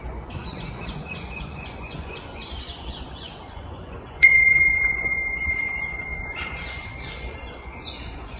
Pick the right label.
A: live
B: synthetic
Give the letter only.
B